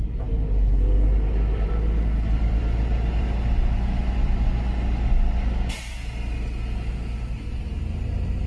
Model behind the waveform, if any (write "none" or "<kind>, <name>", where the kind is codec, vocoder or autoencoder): none